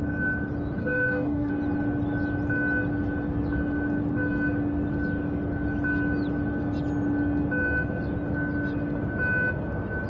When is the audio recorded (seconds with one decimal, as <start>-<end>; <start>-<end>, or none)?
0.0-0.8; 1.5-10.1